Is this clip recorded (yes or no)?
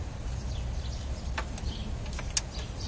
yes